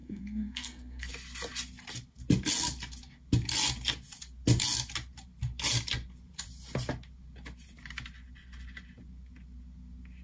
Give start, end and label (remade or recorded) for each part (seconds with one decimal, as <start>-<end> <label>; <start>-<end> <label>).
0.0-1.1 remade; 1.1-10.2 recorded